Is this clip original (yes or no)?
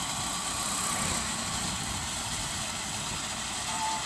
yes